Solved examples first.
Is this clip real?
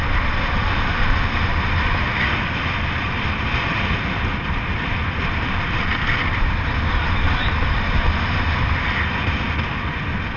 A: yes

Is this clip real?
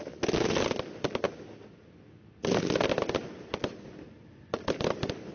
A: yes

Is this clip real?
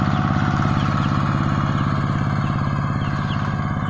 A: yes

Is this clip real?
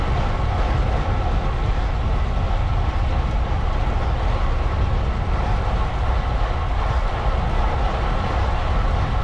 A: yes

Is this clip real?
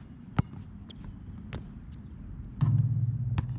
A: yes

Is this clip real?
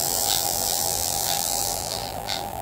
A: no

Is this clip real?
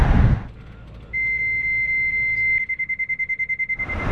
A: yes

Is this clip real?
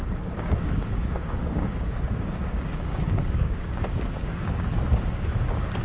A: no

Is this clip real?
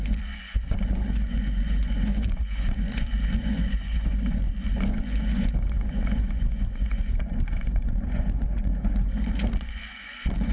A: no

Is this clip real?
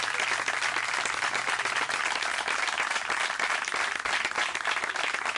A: yes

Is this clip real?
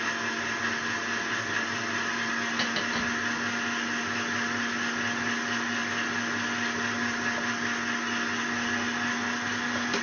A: yes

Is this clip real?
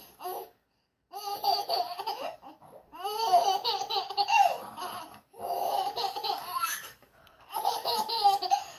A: no